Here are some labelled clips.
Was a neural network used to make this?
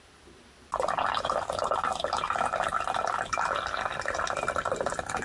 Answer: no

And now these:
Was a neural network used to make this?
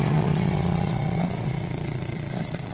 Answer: yes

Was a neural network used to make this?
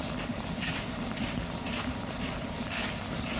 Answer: yes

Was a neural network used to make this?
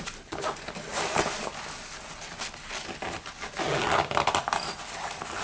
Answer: no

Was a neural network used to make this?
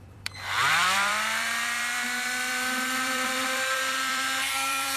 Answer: yes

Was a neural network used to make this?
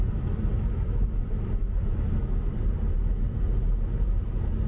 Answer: no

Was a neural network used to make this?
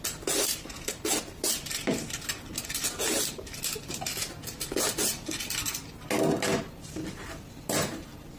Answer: no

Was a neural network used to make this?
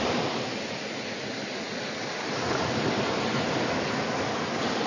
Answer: no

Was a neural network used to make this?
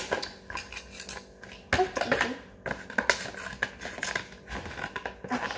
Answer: no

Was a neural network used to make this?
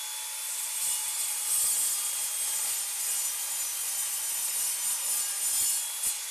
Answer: no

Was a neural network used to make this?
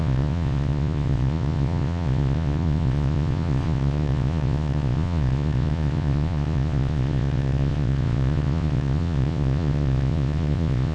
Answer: yes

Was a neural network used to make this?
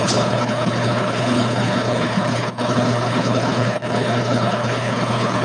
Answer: yes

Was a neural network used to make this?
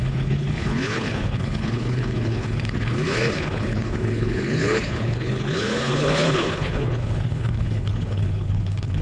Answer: yes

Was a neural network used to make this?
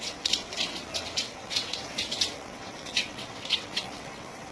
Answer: yes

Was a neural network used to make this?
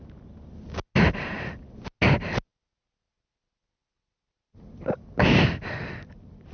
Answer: no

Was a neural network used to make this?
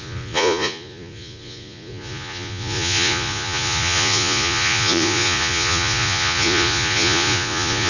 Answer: yes